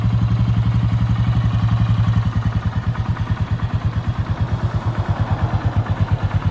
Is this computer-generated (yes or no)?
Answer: no